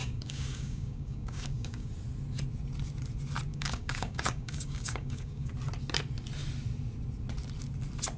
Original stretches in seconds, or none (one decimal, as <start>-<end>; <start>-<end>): 1.9-3.5; 5.5-8.2